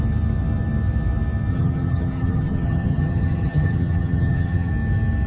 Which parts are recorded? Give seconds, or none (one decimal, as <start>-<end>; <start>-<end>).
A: 0.0-1.5; 4.7-5.3